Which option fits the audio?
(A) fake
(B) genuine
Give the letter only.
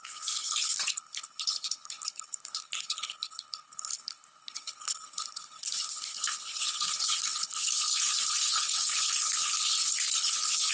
A